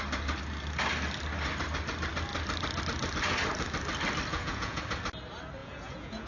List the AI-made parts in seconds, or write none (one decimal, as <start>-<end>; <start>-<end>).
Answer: 4.3-4.8; 5.6-6.3

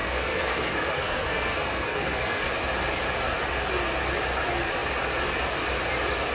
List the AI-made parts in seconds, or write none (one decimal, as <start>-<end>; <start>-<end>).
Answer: 0.0-2.5

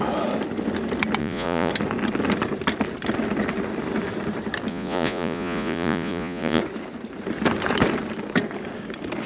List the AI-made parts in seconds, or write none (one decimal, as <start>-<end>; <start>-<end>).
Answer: 1.2-1.7; 4.7-6.6

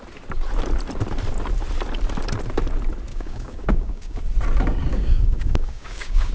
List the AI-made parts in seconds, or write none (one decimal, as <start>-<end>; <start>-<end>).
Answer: 3.1-4.2; 4.9-6.3

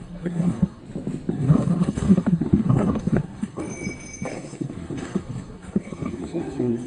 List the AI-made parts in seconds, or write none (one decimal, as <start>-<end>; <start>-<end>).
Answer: 0.0-0.8; 1.3-3.6; 4.3-6.9

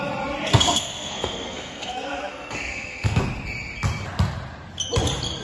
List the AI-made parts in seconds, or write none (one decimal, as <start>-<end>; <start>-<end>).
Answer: 0.5-3.2

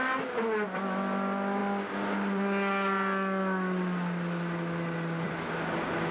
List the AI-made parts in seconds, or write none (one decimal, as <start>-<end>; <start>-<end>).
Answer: none